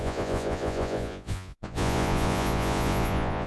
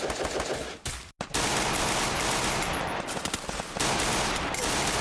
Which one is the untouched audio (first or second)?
second